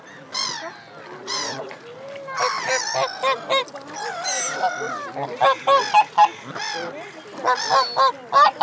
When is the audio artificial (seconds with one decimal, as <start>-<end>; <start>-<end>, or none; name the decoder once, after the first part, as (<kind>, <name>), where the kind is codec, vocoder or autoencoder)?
1.2-1.8 (vocoder, Vocos)

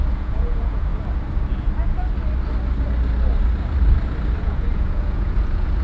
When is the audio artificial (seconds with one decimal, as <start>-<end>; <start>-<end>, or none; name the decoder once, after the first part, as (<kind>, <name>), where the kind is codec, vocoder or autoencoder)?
0.0-0.9 (vocoder, Vocos); 4.4-5.8